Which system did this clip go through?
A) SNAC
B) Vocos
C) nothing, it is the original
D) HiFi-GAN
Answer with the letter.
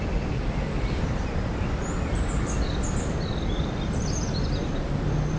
C